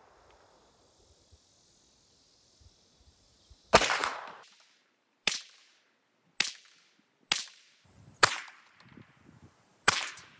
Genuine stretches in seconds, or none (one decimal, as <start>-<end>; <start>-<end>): 0.0-4.0; 5.7-7.4; 8.5-9.7